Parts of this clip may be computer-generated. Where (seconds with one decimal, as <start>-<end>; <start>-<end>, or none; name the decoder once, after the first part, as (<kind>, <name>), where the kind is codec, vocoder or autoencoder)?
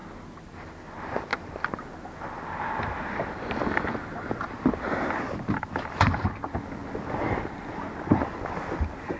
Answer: none